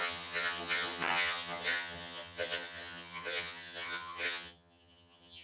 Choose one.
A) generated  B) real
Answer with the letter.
A